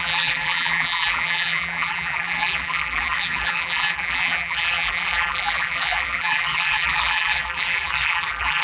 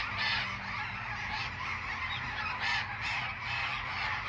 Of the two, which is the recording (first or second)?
second